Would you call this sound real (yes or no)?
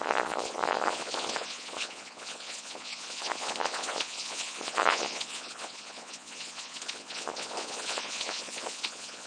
no